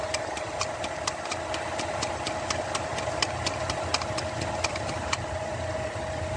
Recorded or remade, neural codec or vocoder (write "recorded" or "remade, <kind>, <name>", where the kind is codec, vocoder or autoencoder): recorded